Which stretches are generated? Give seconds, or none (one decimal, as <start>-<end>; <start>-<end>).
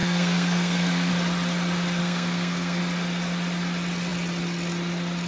0.0-1.1; 2.0-2.8